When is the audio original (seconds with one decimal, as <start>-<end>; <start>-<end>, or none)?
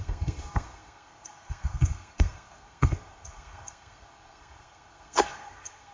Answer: none